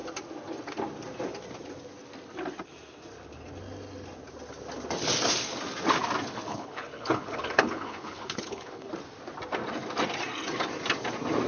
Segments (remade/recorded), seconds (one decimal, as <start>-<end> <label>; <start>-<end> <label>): 0.0-6.5 recorded; 6.5-8.9 remade; 8.9-11.5 recorded